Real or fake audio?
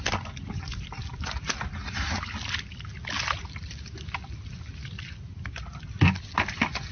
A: real